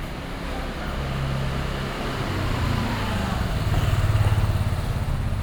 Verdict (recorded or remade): recorded